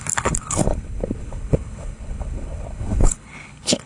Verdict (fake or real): fake